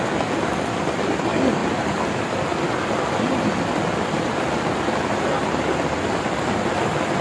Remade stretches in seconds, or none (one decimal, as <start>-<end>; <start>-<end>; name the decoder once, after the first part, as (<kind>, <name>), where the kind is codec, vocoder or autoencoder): none